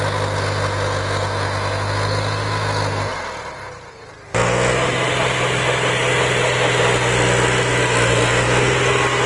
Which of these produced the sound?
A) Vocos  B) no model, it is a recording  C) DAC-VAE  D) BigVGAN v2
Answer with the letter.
B